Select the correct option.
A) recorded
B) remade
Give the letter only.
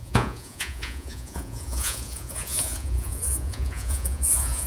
B